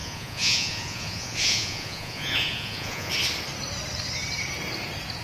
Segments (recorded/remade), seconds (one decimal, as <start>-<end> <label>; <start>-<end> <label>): 0.0-3.1 remade; 3.1-5.2 recorded